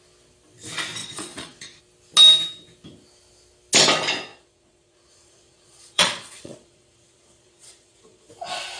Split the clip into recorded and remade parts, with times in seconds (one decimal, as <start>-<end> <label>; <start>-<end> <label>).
0.0-1.0 recorded; 1.0-1.8 remade; 1.8-4.3 recorded; 4.3-8.3 remade; 8.3-8.8 recorded